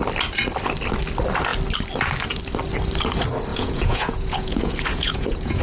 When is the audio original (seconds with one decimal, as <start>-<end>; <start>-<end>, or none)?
0.0-3.5